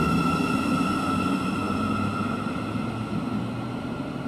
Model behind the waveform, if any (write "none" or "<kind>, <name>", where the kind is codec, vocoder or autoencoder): none